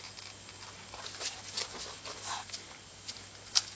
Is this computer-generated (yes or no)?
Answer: no